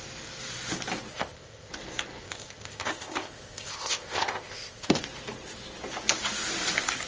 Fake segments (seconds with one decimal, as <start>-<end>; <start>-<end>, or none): 1.1-1.7; 2.2-5.0